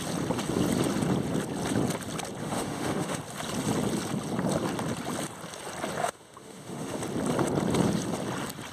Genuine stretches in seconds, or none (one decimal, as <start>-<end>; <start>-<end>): 0.0-2.4; 3.2-6.0; 7.0-8.7